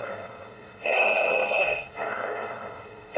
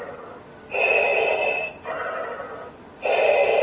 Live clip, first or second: second